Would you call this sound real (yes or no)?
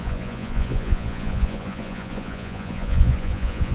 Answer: no